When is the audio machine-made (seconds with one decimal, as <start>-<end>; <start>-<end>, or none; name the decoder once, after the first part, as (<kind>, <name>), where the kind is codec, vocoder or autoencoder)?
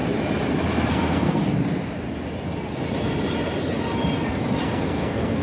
0.9-1.4 (codec, SNAC); 4.6-5.4